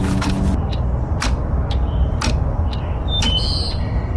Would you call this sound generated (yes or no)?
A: no